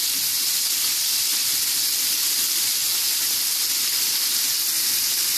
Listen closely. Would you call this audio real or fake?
real